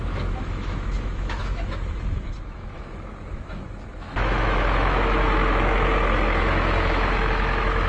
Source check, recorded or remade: remade